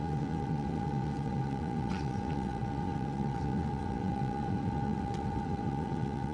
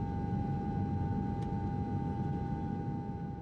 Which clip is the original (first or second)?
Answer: second